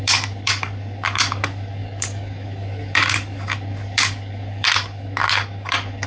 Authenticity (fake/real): fake